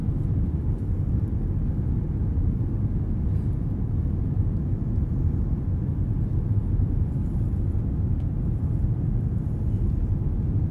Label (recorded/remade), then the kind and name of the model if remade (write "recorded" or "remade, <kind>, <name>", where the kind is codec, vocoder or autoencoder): recorded